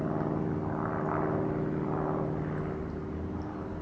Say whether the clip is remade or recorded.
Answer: recorded